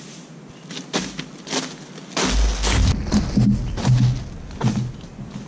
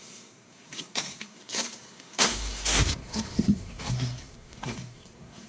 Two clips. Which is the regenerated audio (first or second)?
second